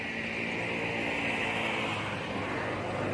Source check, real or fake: real